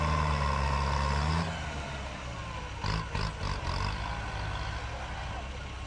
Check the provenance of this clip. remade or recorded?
recorded